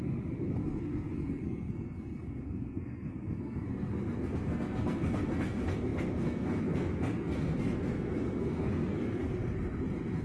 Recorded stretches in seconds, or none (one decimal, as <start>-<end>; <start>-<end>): 9.4-10.2